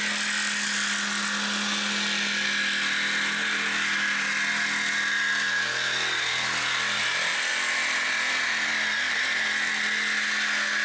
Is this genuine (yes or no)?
yes